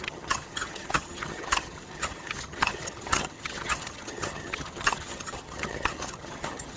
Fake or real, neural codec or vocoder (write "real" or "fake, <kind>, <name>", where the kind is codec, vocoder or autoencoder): fake, vocoder, HiFi-GAN